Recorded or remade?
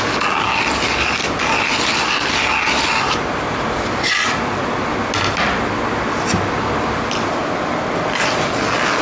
recorded